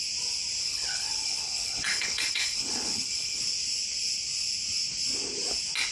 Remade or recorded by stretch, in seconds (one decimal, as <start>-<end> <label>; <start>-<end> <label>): 0.0-0.6 recorded; 0.6-3.4 remade; 3.4-5.9 recorded

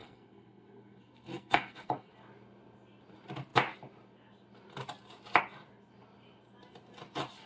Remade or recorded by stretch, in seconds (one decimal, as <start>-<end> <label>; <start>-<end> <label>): 0.0-2.1 remade; 2.1-7.5 recorded

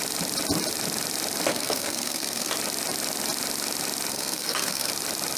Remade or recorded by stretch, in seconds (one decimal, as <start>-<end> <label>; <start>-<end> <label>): 0.0-1.5 recorded; 1.5-2.5 remade; 2.5-4.1 recorded; 4.1-4.9 remade; 4.9-5.4 recorded

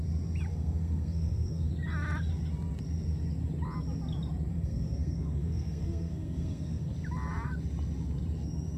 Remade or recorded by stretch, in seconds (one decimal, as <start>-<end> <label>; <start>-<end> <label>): 0.0-0.5 recorded; 0.5-1.7 remade; 1.7-4.5 recorded; 4.5-6.9 remade; 6.9-8.8 recorded

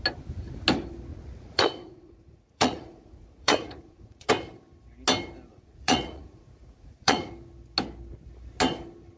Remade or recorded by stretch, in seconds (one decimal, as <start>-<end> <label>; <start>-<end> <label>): 0.0-1.1 recorded; 1.1-4.3 remade; 4.3-5.5 recorded; 5.5-7.3 remade; 7.3-9.2 recorded

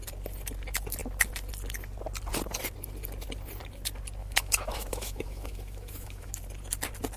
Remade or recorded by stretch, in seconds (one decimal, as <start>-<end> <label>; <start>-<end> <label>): 0.0-4.2 recorded; 4.2-6.3 remade; 6.3-7.2 recorded

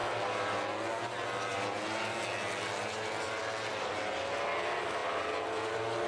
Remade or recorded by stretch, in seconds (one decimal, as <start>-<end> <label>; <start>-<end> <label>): 0.0-3.7 recorded; 3.7-4.5 remade; 4.5-6.1 recorded